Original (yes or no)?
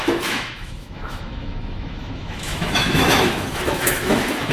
no